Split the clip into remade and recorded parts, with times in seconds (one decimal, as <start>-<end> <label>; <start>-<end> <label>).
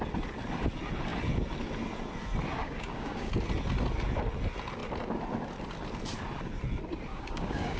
0.0-2.6 recorded; 2.6-3.3 remade; 3.3-7.1 recorded; 7.1-7.8 remade